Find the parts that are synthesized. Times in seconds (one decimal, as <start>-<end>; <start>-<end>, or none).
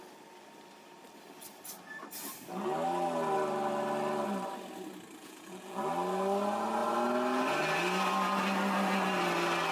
5.2-5.8